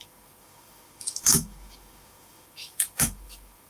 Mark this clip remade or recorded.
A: remade